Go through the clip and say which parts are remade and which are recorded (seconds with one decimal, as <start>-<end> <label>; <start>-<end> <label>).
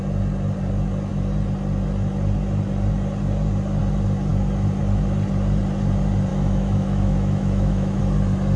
0.0-6.3 recorded; 6.3-8.0 remade; 8.0-8.6 recorded